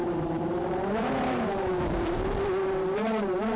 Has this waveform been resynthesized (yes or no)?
yes